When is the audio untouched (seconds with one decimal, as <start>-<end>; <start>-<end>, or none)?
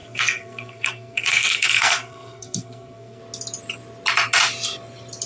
3.2-5.3